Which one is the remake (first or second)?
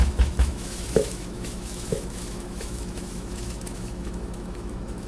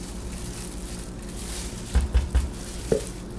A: first